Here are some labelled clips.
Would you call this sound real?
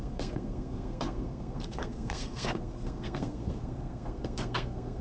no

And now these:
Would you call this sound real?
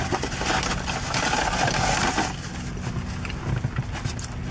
yes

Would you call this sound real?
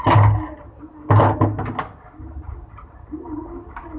yes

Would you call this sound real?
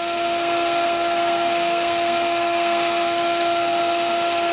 no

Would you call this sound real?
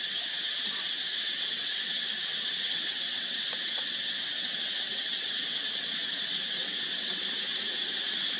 no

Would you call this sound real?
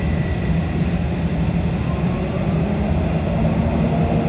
yes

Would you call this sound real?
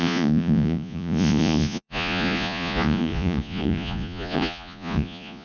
no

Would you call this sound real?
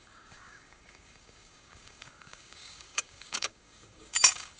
no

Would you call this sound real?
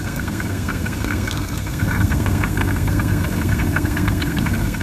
no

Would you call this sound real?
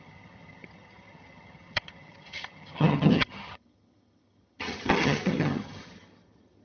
no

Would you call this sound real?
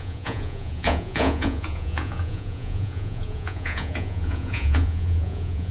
no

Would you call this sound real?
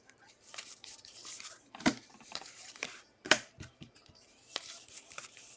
no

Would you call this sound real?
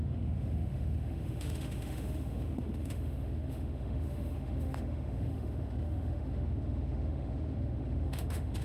no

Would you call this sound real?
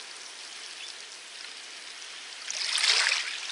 yes